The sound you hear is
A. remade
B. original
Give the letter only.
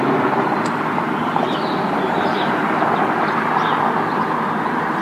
B